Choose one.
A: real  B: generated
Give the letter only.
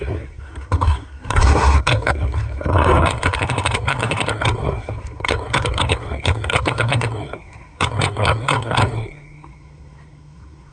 B